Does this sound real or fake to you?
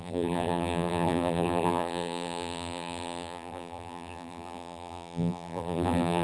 fake